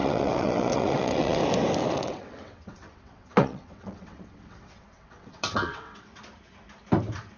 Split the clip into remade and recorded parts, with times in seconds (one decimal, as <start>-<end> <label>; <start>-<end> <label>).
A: 0.0-1.4 remade; 1.4-1.8 recorded; 1.8-6.2 remade; 6.2-7.4 recorded

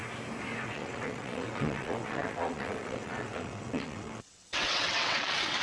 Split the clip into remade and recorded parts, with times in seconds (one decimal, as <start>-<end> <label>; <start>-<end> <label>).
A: 0.0-0.6 recorded; 0.6-5.6 remade

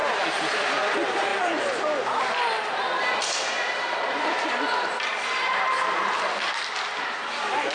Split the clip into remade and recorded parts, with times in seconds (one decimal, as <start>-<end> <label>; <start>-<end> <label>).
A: 0.0-7.7 recorded

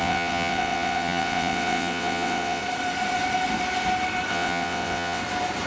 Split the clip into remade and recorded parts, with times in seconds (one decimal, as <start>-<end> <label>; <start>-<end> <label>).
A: 0.0-2.6 remade; 2.6-4.3 recorded; 4.3-5.2 remade; 5.2-5.7 recorded

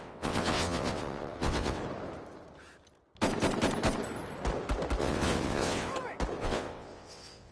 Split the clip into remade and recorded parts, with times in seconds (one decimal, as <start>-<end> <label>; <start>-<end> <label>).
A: 0.0-1.8 remade; 1.8-5.0 recorded; 5.0-5.9 remade; 5.9-6.4 recorded; 6.4-7.5 remade

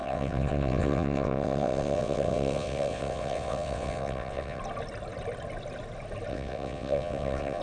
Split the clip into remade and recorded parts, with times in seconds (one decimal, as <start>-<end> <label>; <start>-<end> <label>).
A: 0.0-4.6 remade; 4.6-6.3 recorded; 6.3-7.6 remade